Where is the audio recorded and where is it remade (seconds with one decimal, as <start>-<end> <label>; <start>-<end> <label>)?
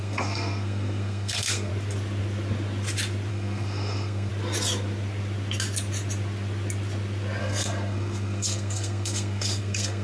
0.0-1.7 remade; 1.7-3.3 recorded; 3.3-4.3 remade; 4.3-7.4 recorded; 7.4-10.0 remade